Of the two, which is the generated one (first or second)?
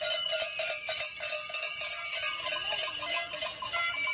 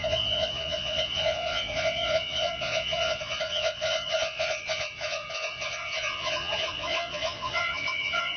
second